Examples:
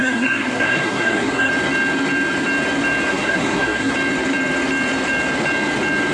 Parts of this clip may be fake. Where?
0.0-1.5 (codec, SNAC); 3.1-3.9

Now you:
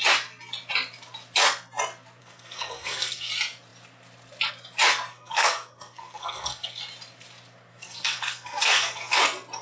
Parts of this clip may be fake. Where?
2.2-3.3 (codec, SNAC); 5.1-6.8; 7.7-9.2

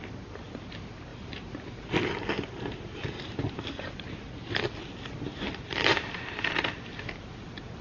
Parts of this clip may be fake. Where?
1.1-4.5 (vocoder, BigVGAN v2); 5.3-6.2

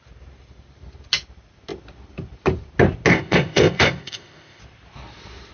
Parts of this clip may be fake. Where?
3.1-4.6 (codec, ZipCodec)

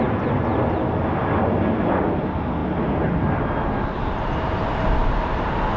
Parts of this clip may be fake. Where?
none

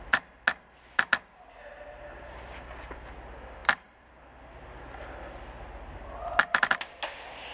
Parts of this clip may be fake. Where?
3.6-4.1 (vocoder, BigVGAN v2)

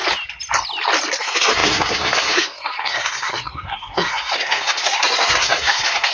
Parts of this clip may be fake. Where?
1.2-6.1 (codec, SNAC)